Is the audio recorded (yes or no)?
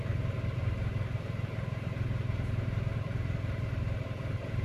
no